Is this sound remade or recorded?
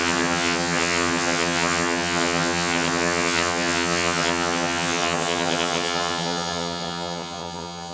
remade